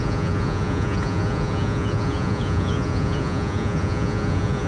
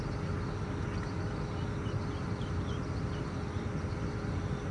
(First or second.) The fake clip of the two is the first